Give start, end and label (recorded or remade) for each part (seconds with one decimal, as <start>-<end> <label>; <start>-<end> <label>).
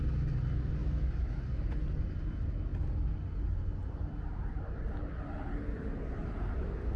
0.0-0.8 recorded; 0.8-1.4 remade; 1.4-7.0 recorded